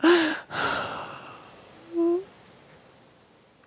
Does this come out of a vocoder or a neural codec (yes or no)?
no